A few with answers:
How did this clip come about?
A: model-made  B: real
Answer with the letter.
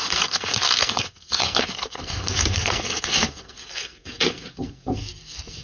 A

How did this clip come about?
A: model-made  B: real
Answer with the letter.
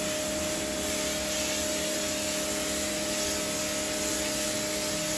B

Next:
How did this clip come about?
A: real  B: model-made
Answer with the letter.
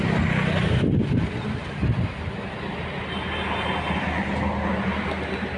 A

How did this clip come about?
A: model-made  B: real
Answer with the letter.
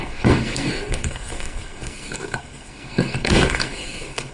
A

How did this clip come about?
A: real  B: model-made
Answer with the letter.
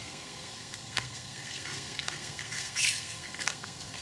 B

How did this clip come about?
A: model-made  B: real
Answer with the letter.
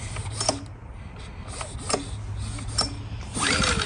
B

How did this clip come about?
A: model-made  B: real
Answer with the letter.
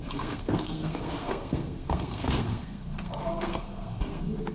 A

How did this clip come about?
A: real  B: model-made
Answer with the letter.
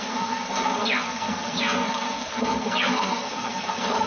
B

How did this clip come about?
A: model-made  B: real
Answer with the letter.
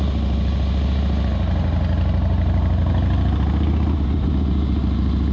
B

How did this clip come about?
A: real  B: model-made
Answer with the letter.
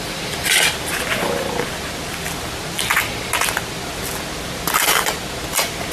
A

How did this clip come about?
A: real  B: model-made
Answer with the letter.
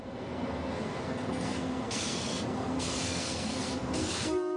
B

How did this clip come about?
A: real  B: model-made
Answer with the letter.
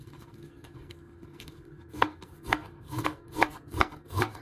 B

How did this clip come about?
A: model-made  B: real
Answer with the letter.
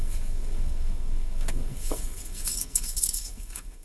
A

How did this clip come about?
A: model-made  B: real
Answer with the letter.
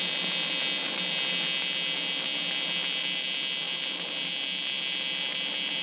B